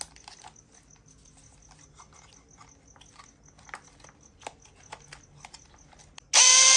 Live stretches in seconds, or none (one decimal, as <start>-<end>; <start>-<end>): 0.0-6.8